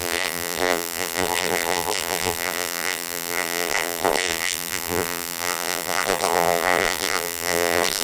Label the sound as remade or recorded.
remade